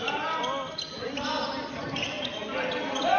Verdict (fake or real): real